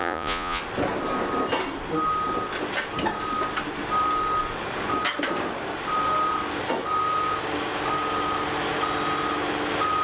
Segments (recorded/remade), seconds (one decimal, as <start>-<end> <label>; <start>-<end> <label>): 0.0-0.6 remade; 0.6-10.0 recorded